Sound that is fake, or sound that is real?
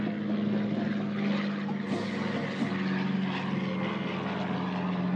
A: real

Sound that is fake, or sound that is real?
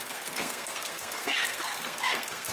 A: fake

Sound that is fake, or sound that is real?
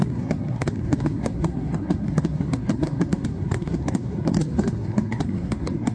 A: fake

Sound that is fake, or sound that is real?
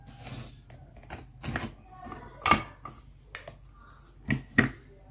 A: real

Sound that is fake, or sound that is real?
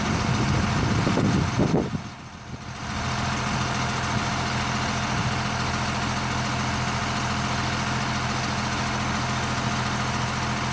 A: real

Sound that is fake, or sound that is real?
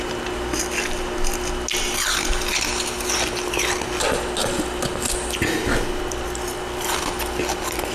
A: real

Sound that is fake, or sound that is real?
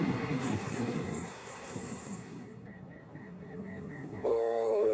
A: fake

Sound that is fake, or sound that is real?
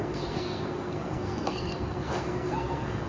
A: fake